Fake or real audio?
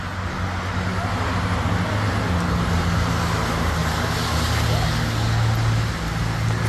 real